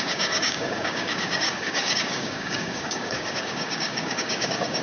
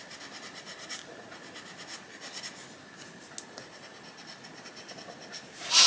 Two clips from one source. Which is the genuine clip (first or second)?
second